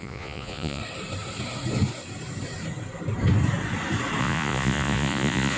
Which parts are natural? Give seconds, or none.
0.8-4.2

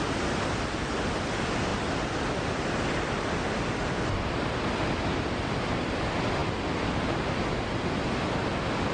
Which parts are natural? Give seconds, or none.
0.0-8.9

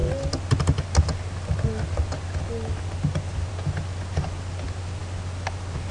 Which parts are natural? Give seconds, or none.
0.0-5.9